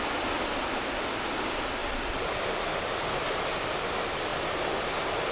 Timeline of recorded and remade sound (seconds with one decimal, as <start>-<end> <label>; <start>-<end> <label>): 0.0-5.3 recorded